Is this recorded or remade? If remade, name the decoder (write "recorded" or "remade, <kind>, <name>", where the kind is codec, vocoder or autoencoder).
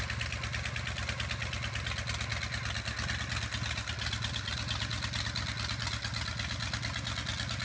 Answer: recorded